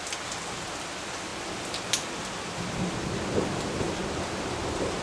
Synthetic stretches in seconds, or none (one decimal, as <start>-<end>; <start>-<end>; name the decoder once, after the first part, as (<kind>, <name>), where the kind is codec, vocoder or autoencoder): none